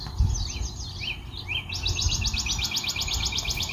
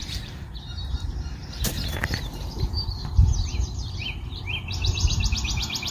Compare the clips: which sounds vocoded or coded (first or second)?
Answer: second